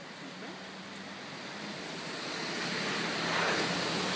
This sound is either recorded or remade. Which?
recorded